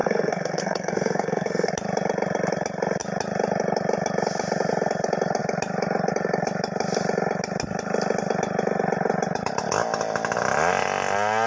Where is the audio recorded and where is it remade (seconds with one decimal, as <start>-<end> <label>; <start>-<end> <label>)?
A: 0.0-1.7 remade; 1.7-11.5 recorded